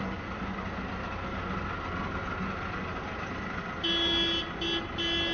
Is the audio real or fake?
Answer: real